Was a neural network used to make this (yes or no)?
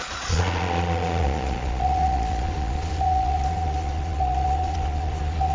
yes